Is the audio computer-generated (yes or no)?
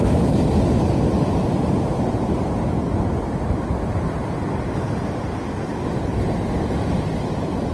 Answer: no